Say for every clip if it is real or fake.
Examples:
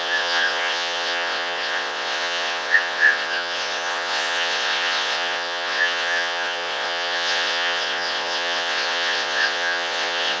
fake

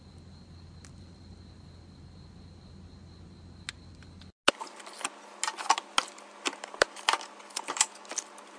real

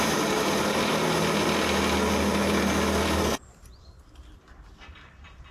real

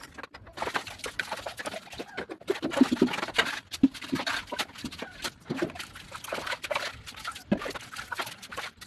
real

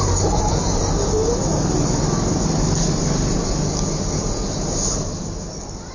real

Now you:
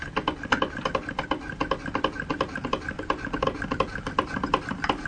real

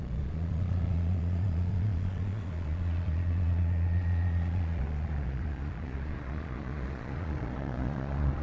fake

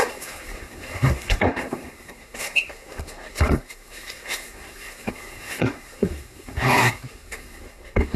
fake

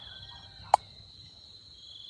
real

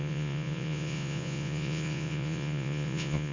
fake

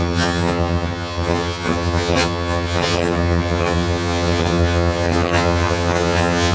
fake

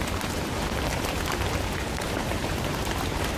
fake